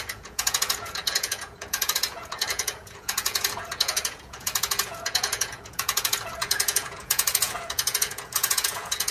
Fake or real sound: fake